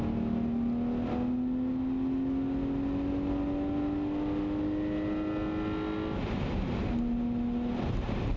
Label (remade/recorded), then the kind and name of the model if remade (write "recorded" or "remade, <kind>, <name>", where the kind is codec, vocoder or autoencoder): recorded